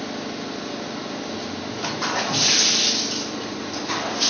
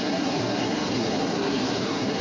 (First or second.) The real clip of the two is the first